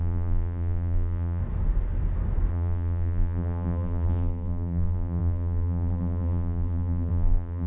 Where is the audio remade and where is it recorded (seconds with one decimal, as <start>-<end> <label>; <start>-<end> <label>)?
0.0-1.4 remade; 1.4-2.5 recorded; 2.5-7.7 remade